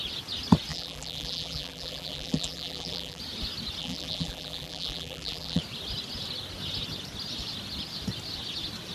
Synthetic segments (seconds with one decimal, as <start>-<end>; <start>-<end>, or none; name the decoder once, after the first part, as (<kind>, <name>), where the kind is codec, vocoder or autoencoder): 0.7-3.2 (vocoder, BigVGAN v2); 3.8-5.6